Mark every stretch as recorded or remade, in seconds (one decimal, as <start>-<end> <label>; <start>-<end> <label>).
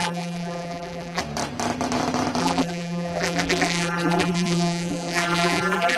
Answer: 0.0-1.2 remade; 1.2-2.4 recorded; 2.4-6.0 remade